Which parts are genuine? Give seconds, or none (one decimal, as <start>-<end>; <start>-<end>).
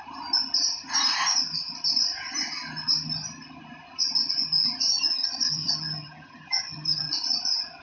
0.0-4.9; 7.1-7.8